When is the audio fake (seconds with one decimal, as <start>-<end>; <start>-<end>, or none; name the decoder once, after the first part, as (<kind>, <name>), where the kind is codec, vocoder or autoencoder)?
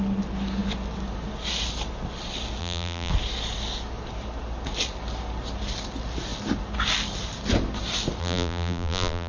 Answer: 2.6-3.1 (vocoder, BigVGAN v2); 8.2-9.3